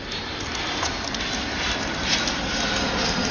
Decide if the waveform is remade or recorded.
recorded